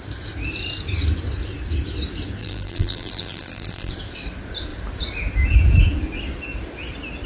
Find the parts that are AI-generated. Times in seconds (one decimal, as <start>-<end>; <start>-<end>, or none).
2.4-3.9